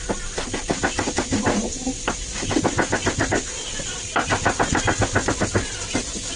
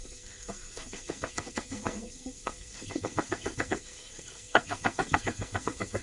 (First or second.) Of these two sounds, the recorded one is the first